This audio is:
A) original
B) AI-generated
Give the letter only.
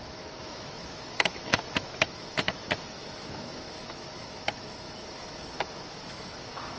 B